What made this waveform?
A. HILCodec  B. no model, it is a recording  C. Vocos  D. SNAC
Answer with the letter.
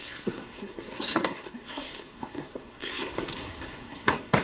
D